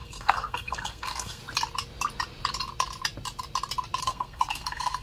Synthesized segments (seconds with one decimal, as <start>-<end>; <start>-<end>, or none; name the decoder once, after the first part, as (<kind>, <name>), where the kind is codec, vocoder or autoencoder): 0.0-1.4 (codec, SNAC); 4.0-5.0

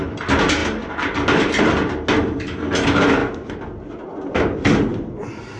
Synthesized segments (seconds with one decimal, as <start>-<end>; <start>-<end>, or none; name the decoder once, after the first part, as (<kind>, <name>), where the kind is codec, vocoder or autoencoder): none

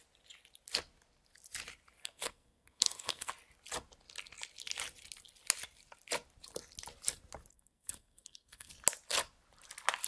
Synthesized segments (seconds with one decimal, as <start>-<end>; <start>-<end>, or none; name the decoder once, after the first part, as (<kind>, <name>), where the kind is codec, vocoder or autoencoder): 2.0-3.3 (codec, SNAC); 7.5-8.7

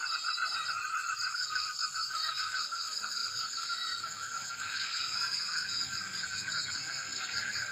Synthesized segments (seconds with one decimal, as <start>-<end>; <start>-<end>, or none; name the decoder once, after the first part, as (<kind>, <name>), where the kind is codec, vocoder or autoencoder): 1.3-7.7 (codec, SNAC)

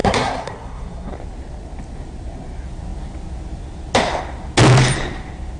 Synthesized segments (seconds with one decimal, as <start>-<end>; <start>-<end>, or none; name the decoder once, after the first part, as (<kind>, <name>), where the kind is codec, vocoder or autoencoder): 0.0-1.1 (codec, SNAC)

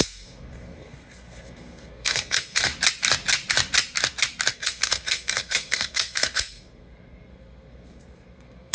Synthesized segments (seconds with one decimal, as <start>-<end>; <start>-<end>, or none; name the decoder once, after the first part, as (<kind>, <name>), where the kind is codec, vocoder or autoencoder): 0.0-2.7 (codec, SNAC); 4.5-8.7

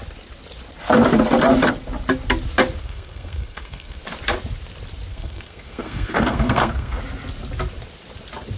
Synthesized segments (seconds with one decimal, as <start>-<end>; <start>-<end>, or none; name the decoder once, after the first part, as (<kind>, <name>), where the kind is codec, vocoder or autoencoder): 2.8-4.0 (codec, SNAC); 5.1-7.0